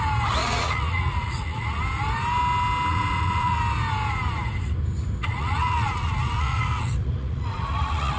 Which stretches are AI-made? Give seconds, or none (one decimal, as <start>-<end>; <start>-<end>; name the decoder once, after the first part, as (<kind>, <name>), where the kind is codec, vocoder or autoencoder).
0.4-1.8 (vocoder, Vocos); 2.9-3.6; 5.2-8.2

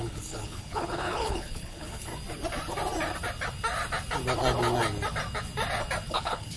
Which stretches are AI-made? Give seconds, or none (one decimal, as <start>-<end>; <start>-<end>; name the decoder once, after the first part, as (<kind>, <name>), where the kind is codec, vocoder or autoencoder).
0.0-2.1 (codec, HILCodec); 6.1-6.6

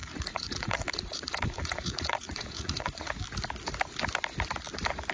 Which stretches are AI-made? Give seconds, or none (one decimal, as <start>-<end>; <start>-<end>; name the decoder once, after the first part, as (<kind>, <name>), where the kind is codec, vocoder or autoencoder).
0.0-3.1 (vocoder, Vocos)

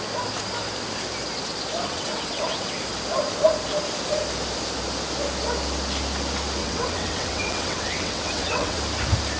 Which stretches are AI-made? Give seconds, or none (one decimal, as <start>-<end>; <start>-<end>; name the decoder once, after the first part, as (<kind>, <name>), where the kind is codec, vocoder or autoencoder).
1.9-2.8 (vocoder, WaveNeXt); 6.6-8.8

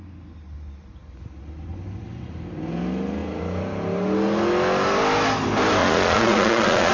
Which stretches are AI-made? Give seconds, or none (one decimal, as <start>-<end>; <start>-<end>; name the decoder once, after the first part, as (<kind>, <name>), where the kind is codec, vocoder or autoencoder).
5.8-6.9 (vocoder, Vocos)

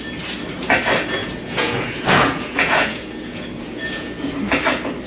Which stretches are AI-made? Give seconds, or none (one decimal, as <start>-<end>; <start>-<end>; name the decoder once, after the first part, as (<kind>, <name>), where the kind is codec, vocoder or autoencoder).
1.2-4.3 (vocoder, Vocos)